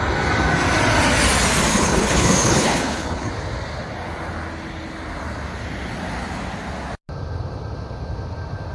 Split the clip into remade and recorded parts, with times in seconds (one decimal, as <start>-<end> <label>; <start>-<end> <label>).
0.0-1.7 recorded; 1.7-3.3 remade; 3.3-8.7 recorded